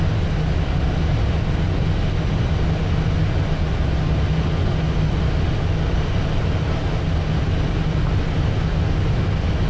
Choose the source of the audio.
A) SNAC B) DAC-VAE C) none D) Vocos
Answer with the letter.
C